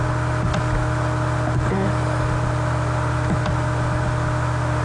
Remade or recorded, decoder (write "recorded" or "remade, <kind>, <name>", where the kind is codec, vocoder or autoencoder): recorded